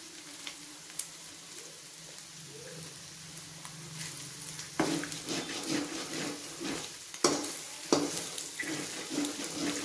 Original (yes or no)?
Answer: yes